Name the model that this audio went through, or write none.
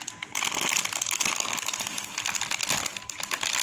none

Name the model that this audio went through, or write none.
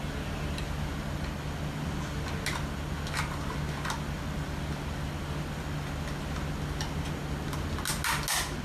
none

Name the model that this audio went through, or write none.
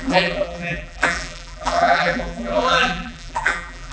vocoder, BigVGAN v2